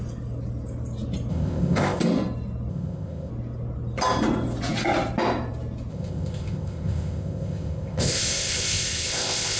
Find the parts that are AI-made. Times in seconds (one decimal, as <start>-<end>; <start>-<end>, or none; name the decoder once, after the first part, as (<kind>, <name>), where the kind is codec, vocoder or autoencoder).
1.3-2.0 (codec, ZipCodec); 2.7-3.3; 5.9-9.6